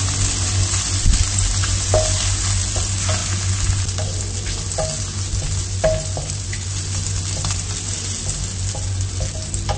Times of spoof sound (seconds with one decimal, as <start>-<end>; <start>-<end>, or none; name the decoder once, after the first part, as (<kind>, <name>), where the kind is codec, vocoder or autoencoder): none